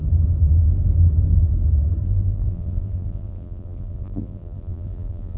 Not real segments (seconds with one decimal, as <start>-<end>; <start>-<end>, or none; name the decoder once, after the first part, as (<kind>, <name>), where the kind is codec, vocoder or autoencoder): 2.0-5.4 (vocoder, BigVGAN v2)